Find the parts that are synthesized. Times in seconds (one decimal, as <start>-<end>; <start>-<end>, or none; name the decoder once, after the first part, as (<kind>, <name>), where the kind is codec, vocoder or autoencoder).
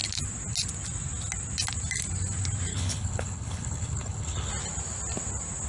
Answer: 2.7-4.5 (codec, HILCodec)